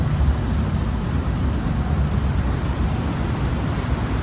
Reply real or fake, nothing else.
real